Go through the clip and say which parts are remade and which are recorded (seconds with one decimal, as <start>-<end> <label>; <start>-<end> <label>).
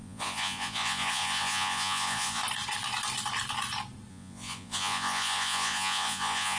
0.0-2.4 remade; 2.4-4.1 recorded; 4.1-6.6 remade